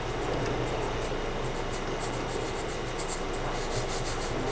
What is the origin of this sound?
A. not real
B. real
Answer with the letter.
B